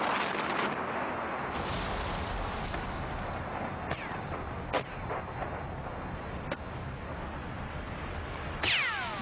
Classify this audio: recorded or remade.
recorded